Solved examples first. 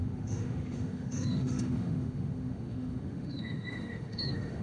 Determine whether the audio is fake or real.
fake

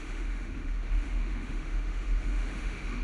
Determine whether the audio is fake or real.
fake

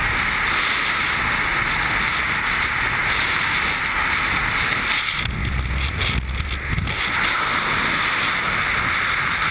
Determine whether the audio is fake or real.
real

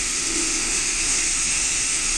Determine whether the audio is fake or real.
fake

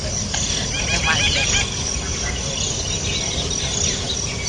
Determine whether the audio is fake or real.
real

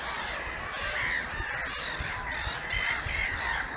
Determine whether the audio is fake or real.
real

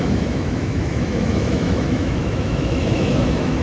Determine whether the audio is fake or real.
fake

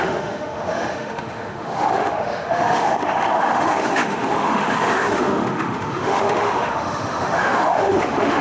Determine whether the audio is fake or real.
fake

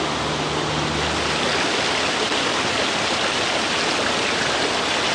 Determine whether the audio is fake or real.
real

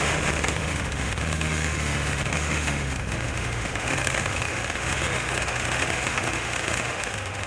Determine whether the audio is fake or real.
fake